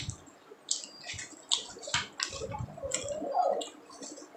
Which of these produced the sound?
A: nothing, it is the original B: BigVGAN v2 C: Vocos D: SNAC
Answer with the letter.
A